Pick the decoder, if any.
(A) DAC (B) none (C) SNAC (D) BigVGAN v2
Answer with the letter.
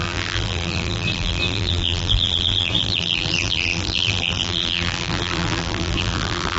D